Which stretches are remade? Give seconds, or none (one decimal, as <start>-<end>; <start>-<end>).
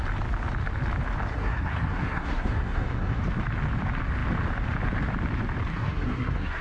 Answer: 1.3-3.2; 5.7-6.6